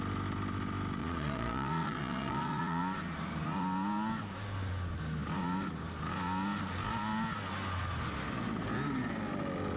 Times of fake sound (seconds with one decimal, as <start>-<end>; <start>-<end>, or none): 1.0-2.8